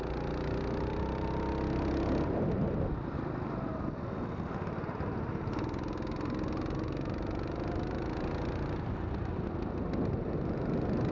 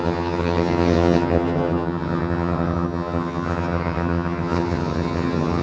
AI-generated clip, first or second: second